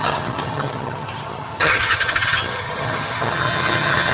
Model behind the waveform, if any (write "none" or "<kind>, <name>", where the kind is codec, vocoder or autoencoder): vocoder, HiFi-GAN